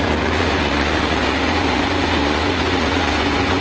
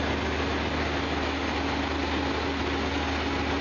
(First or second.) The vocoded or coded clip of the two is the first